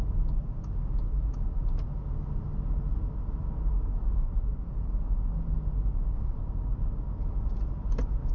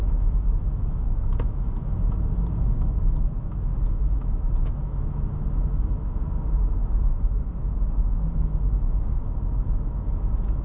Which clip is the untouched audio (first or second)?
first